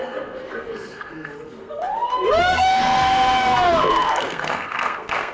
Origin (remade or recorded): remade